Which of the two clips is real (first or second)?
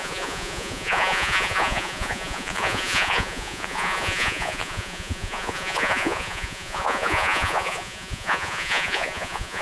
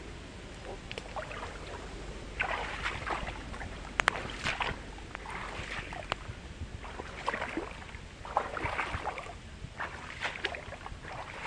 second